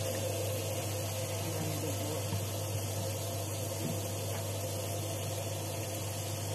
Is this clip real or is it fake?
real